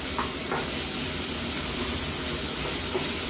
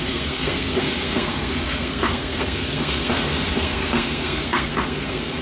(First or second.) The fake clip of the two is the second